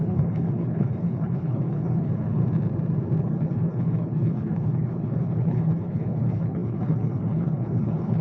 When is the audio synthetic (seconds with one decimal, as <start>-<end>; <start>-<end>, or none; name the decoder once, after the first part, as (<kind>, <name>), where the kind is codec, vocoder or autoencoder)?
0.0-2.4 (codec, HILCodec); 3.2-8.2